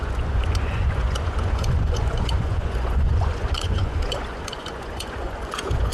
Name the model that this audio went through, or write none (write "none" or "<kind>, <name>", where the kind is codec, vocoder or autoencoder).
vocoder, Vocos